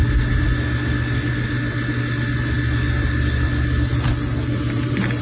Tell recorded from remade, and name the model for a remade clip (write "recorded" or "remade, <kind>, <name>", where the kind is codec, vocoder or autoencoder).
recorded